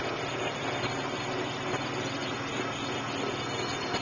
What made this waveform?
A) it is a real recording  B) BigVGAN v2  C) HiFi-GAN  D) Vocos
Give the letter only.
A